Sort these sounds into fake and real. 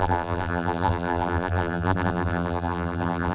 fake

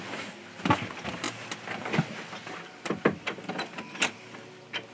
real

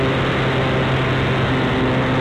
real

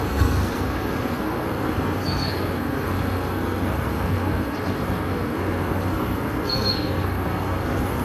fake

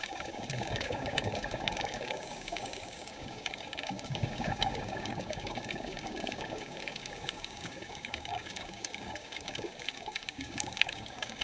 fake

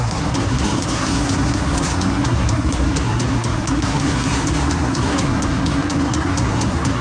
fake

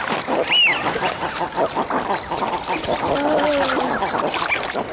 real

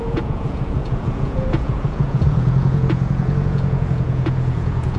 fake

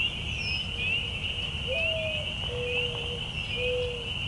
real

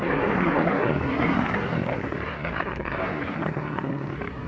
fake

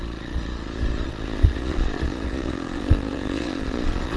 fake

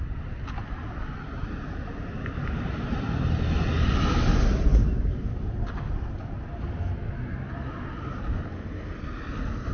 real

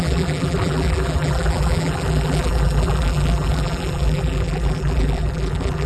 fake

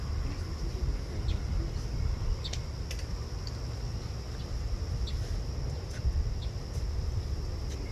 real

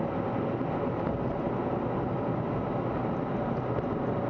real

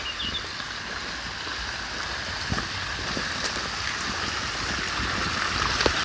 real